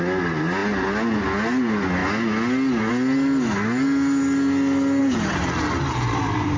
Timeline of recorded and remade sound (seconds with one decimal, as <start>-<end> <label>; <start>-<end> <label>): 0.0-5.0 recorded; 5.0-6.6 remade